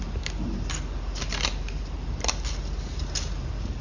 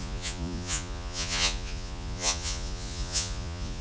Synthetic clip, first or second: second